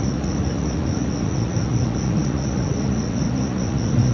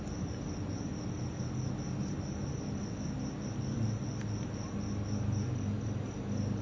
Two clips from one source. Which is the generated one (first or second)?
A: first